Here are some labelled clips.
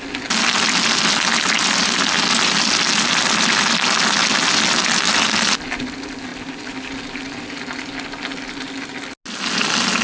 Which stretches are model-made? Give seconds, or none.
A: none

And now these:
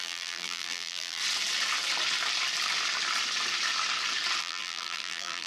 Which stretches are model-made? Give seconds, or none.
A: 0.0-1.2 (vocoder, BigVGAN v2); 4.4-5.5